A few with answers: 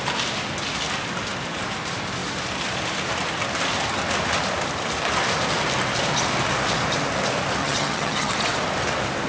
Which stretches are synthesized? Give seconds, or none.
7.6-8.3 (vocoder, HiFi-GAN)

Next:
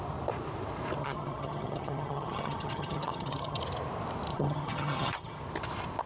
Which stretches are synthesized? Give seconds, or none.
1.0-3.6 (vocoder, HiFi-GAN); 4.3-5.4

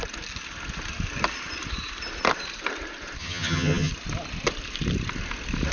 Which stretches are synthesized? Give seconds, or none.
3.2-3.9 (vocoder, HiFi-GAN)

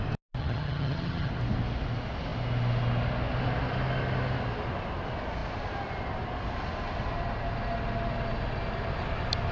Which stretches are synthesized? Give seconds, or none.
0.4-1.3 (vocoder, HiFi-GAN)

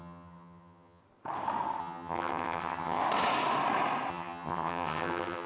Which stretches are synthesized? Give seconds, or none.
0.0-1.0 (vocoder, HiFi-GAN); 1.8-3.0; 4.1-5.5

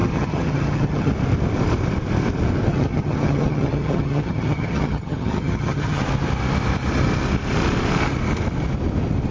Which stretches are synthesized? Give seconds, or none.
0.0-1.1 (vocoder, HiFi-GAN); 2.7-6.0

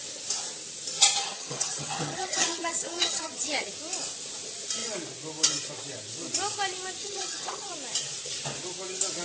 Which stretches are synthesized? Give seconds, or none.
1.2-3.7 (vocoder, HiFi-GAN); 7.0-7.7

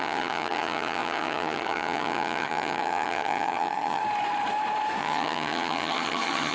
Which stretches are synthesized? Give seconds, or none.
0.0-4.0 (vocoder, HiFi-GAN); 5.0-6.5